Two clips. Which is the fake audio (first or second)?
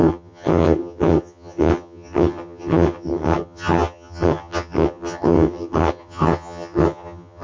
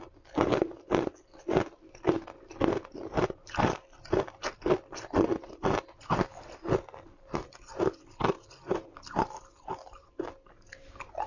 first